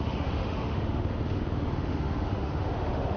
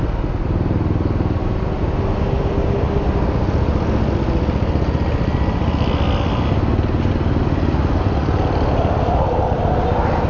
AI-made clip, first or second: first